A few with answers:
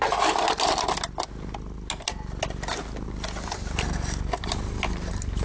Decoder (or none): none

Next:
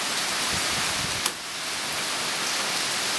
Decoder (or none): none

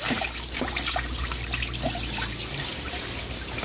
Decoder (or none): none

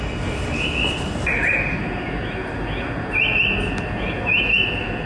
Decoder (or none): none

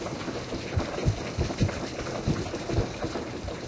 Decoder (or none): none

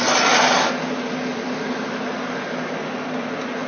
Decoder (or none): none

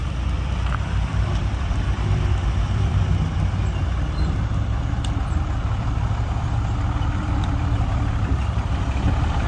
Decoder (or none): vocoder, BigVGAN v2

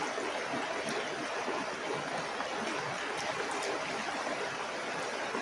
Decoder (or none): none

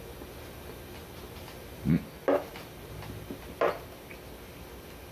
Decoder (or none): none